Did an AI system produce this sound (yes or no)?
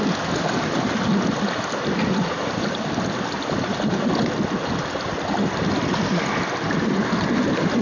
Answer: no